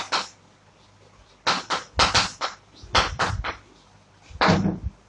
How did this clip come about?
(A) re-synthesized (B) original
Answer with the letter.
B